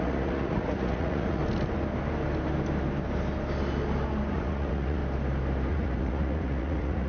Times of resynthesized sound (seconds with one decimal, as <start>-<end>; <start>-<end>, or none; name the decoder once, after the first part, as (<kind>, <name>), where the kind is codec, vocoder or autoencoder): 0.0-1.4 (vocoder, Vocos); 4.3-5.0; 5.7-7.1